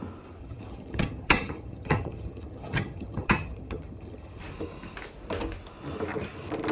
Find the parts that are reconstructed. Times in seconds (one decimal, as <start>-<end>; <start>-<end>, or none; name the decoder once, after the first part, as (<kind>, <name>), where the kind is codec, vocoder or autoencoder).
0.4-4.4 (vocoder, HiFi-GAN)